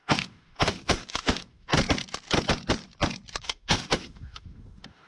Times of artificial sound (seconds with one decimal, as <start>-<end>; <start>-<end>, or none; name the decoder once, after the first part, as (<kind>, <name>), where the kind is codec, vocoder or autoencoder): 0.0-1.7 (autoencoder, DAC-VAE); 3.4-5.1